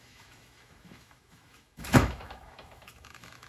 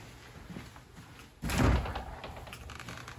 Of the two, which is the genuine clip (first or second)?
second